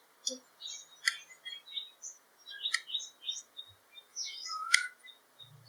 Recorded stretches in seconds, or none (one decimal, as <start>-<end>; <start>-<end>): 0.0-4.1; 4.9-5.7